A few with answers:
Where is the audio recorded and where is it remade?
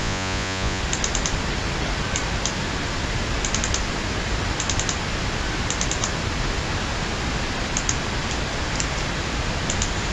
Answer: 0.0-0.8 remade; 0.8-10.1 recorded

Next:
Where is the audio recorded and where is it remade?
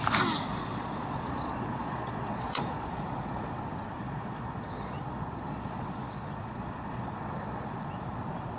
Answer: 0.0-0.5 recorded; 0.5-3.6 remade; 3.6-4.0 recorded; 4.0-8.2 remade; 8.2-8.6 recorded